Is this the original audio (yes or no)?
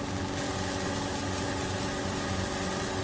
yes